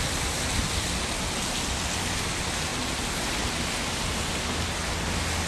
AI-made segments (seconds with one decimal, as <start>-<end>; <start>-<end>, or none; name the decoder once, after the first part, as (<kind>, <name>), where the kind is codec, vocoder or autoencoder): none